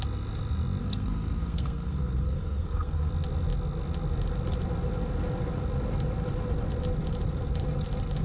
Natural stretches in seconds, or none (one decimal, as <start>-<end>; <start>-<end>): 0.0-0.8; 3.1-8.2